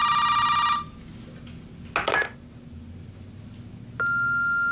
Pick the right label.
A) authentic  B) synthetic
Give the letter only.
A